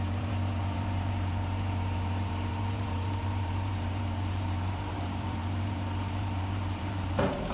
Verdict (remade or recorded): remade